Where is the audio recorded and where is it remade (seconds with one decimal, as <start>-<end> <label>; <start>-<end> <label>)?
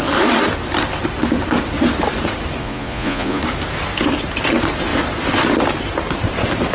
0.0-2.6 recorded; 2.6-3.4 remade; 3.4-6.7 recorded